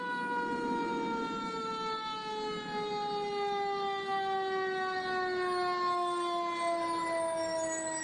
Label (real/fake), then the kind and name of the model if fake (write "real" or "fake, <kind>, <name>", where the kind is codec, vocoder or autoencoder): real